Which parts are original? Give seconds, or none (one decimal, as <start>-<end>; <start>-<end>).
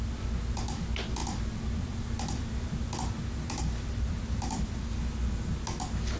0.0-1.2; 4.8-6.2